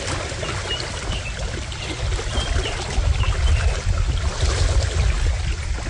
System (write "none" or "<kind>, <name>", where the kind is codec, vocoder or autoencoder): none